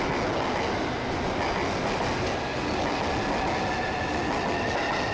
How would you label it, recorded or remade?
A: recorded